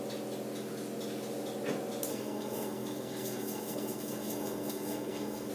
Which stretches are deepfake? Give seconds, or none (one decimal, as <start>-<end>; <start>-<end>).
2.1-5.5